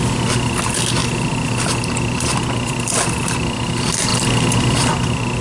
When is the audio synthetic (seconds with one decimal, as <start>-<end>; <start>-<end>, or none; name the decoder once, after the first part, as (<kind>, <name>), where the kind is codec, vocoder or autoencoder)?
none